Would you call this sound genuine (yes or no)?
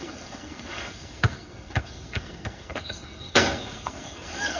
no